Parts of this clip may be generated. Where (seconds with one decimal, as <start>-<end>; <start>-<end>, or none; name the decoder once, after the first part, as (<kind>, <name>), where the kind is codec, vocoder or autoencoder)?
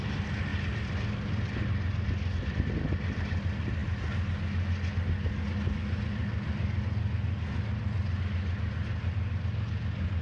none